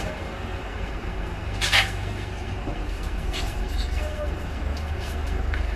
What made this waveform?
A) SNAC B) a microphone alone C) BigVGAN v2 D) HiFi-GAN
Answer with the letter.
A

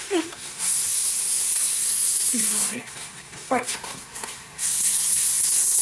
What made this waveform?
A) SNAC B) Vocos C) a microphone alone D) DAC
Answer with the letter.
A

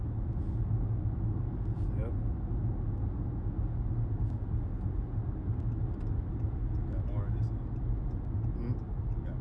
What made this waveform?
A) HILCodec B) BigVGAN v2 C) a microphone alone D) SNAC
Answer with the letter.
C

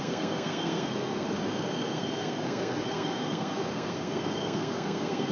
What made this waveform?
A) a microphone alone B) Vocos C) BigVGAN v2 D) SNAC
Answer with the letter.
D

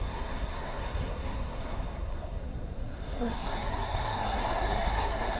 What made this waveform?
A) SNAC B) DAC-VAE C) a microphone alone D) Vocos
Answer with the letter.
A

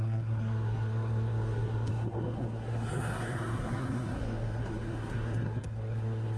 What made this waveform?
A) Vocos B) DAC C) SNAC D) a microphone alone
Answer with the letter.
C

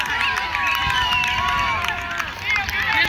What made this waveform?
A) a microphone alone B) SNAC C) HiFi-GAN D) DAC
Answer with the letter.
A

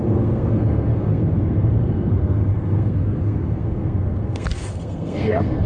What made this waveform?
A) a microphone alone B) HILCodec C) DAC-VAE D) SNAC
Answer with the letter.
D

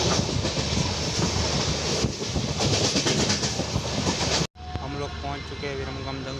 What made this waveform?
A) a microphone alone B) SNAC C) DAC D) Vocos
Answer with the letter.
A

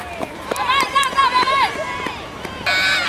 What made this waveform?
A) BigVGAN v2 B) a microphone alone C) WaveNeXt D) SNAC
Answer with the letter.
B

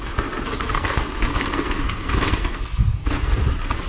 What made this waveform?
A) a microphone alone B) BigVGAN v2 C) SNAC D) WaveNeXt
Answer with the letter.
C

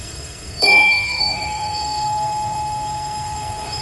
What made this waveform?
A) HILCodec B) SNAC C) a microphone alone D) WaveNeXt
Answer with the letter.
B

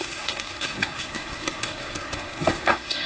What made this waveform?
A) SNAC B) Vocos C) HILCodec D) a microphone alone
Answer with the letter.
A